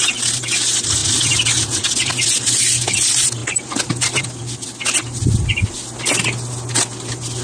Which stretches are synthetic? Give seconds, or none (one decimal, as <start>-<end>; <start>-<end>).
none